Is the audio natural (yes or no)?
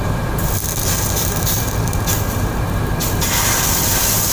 yes